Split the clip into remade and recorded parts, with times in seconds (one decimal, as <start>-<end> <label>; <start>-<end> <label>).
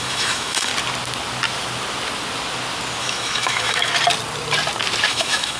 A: 0.0-0.7 remade; 0.7-3.0 recorded; 3.0-3.9 remade; 3.9-5.1 recorded; 5.1-5.6 remade